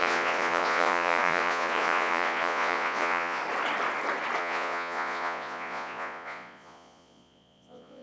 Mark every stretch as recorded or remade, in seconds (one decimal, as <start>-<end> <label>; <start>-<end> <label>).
0.0-3.4 remade; 3.4-4.4 recorded; 4.4-8.0 remade